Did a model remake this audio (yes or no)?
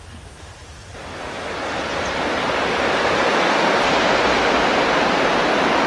yes